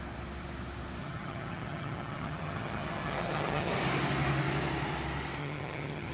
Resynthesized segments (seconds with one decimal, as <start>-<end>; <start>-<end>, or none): 1.0-3.7; 5.4-6.1